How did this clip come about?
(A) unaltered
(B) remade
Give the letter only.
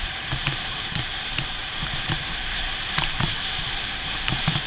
B